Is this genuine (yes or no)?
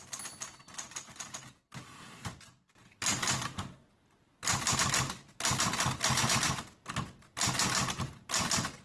yes